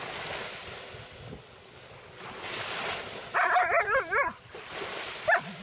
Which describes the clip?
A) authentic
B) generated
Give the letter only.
A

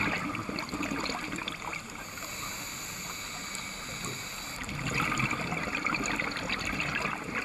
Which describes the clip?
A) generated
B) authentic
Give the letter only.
B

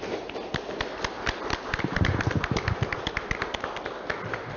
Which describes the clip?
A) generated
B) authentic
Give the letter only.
B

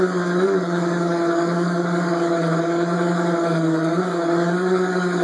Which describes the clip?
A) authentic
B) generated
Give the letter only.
B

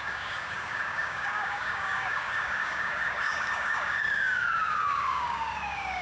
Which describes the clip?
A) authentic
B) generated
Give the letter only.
B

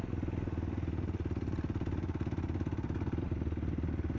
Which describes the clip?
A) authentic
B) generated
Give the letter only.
A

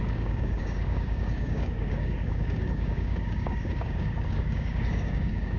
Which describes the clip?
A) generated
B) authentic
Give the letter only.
A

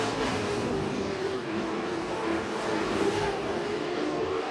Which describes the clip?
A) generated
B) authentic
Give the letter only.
A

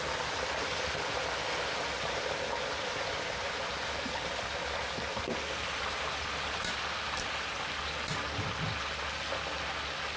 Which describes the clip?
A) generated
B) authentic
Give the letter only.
B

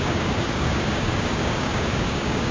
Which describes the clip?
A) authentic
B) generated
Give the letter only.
B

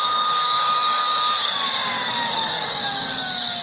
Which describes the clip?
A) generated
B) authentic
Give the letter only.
A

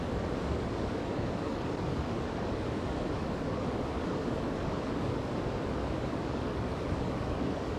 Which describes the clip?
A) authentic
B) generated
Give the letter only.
B